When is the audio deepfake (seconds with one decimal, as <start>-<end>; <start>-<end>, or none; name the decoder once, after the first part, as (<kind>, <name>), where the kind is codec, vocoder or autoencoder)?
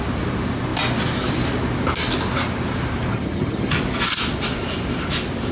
3.1-3.7 (vocoder, HiFi-GAN)